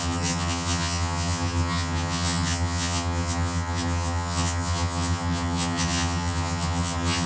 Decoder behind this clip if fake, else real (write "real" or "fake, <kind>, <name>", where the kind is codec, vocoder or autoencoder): fake, vocoder, HiFi-GAN